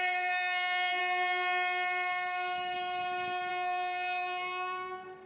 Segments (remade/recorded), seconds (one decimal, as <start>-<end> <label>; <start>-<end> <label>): 0.0-1.0 remade; 1.0-3.5 recorded; 3.5-5.3 remade